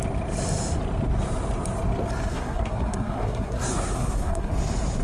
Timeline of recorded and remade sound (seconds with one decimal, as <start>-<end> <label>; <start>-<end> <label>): 0.0-2.3 recorded; 2.3-4.5 remade; 4.5-5.0 recorded